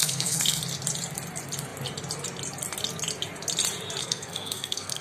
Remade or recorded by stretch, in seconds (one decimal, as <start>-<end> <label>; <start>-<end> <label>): 0.0-0.6 remade; 0.6-4.0 recorded; 4.0-5.0 remade